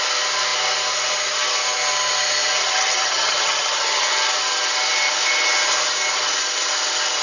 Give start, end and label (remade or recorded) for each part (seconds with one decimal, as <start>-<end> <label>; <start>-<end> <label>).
0.0-2.6 recorded; 2.6-4.1 remade; 4.1-7.2 recorded